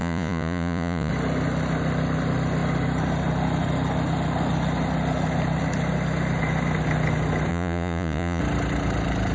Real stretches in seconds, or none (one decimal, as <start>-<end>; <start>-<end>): 1.1-7.5; 8.4-9.3